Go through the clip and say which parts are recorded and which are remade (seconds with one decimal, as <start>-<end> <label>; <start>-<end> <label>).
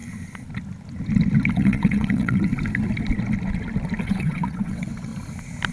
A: 0.0-1.5 recorded; 1.5-2.5 remade; 2.5-4.0 recorded; 4.0-5.1 remade; 5.1-5.7 recorded